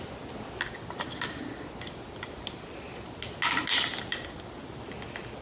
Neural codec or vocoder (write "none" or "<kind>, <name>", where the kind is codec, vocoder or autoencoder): none